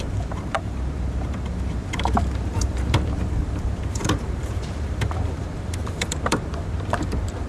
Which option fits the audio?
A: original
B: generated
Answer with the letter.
B